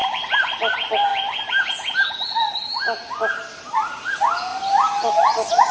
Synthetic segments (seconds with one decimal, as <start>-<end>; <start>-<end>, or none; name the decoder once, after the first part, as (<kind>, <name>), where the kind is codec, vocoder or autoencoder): 0.0-0.5 (vocoder, BigVGAN v2); 4.5-5.3